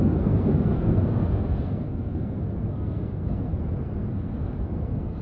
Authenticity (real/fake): fake